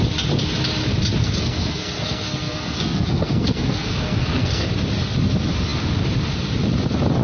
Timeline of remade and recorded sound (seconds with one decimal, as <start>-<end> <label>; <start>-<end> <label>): 0.0-1.2 recorded; 1.2-4.7 remade; 4.7-7.2 recorded

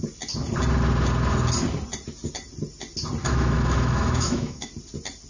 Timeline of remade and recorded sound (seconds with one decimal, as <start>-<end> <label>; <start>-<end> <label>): 0.0-3.2 recorded; 3.2-4.7 remade; 4.7-5.3 recorded

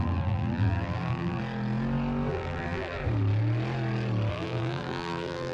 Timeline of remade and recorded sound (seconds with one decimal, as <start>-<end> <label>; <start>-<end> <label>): 0.0-1.4 remade; 1.4-2.3 recorded; 2.3-3.0 remade; 3.0-4.3 recorded; 4.3-5.5 remade

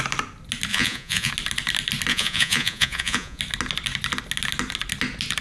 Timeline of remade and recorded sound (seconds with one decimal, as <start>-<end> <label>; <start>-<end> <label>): 0.0-0.7 recorded; 0.7-1.3 remade; 1.3-2.1 recorded; 2.1-3.4 remade; 3.4-5.4 recorded

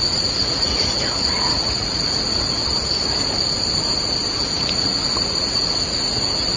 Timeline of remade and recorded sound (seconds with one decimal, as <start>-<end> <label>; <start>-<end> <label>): 0.0-2.6 remade; 2.6-4.6 recorded; 4.6-6.6 remade